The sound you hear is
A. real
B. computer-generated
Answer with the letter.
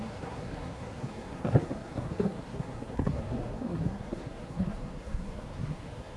B